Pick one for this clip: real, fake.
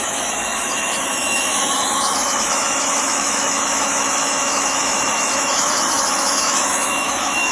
fake